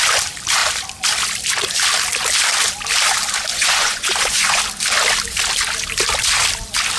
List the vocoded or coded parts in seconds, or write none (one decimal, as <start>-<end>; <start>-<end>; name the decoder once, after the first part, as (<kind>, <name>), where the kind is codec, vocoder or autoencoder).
3.5-4.6 (vocoder, Vocos)